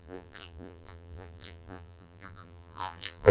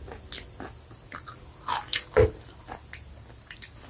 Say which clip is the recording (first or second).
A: second